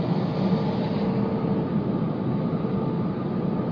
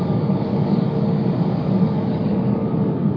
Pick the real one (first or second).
first